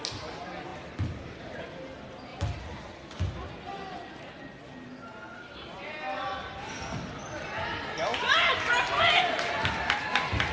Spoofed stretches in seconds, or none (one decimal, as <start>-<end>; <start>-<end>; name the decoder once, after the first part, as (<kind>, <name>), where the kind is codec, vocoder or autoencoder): 0.7-1.4 (vocoder, BigVGAN v2); 2.3-3.5